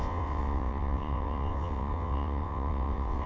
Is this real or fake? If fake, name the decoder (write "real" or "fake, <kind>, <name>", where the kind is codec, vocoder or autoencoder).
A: fake, vocoder, WaveNeXt